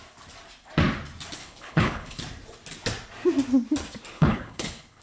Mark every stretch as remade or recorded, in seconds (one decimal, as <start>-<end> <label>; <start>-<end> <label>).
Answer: 0.0-1.4 recorded; 1.4-2.2 remade; 2.2-4.1 recorded; 4.1-5.0 remade